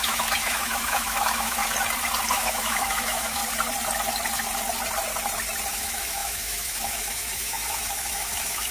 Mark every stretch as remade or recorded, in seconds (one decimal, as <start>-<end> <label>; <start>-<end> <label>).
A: 0.0-1.6 remade; 1.6-2.3 recorded; 2.3-3.4 remade; 3.4-5.7 recorded; 5.7-8.7 remade